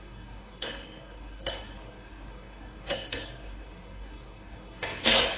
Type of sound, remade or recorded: remade